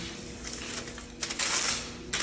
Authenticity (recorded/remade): recorded